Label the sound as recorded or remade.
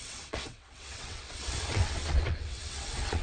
remade